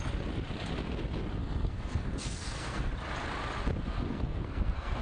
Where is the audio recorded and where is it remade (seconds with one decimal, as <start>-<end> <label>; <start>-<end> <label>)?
0.0-1.4 recorded; 1.4-2.9 remade; 2.9-4.1 recorded; 4.1-5.0 remade